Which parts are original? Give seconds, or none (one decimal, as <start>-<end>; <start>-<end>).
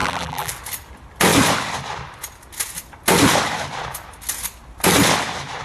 0.5-5.6